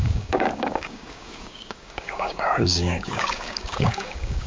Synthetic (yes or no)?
yes